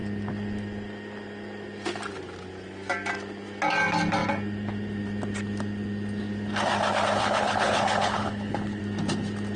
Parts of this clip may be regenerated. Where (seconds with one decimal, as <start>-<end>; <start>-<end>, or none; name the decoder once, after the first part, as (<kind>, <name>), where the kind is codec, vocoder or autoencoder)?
7.2-8.8 (codec, HILCodec)